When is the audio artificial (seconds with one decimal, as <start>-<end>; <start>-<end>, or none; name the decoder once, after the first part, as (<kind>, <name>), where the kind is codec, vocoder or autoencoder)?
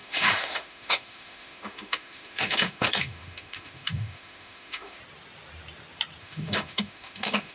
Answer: 0.0-5.0 (autoencoder, DAC-VAE); 6.2-7.5